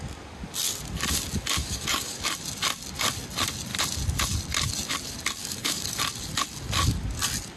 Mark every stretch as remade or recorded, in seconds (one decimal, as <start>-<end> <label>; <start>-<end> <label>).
0.0-1.6 recorded; 1.6-2.2 remade; 2.2-5.4 recorded; 5.4-6.0 remade; 6.0-7.6 recorded